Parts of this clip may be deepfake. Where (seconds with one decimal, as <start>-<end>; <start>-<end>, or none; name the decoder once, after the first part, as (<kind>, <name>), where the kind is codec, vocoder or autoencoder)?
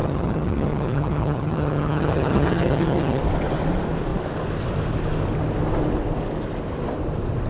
0.0-3.2 (vocoder, HiFi-GAN)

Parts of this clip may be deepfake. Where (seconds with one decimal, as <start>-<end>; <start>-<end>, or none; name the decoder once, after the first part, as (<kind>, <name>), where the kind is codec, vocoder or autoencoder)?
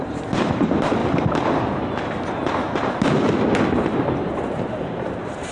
0.0-1.0 (vocoder, BigVGAN v2); 4.3-5.5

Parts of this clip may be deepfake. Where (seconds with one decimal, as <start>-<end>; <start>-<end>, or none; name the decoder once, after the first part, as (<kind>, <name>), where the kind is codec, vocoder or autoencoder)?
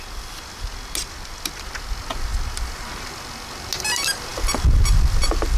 none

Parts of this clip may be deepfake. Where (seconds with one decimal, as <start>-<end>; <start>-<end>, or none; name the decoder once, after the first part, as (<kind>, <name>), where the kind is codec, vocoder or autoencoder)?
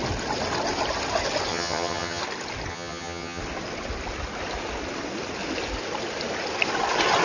1.5-2.2 (vocoder, HiFi-GAN); 2.7-3.4